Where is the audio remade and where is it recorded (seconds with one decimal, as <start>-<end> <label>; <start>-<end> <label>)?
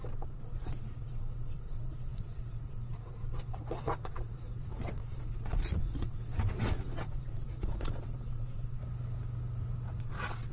0.0-8.8 remade; 8.8-10.0 recorded; 10.0-10.5 remade